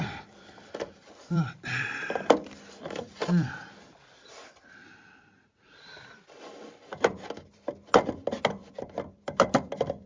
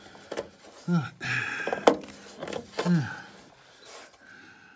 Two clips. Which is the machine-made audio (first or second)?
first